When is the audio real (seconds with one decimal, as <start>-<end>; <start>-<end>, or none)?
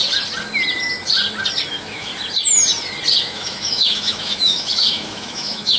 0.0-1.7; 2.1-3.2